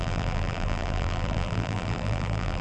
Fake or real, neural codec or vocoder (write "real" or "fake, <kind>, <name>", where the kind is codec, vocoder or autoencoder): fake, vocoder, BigVGAN v2